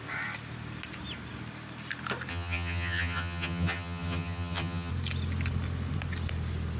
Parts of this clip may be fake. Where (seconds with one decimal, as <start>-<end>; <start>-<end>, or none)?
2.3-4.9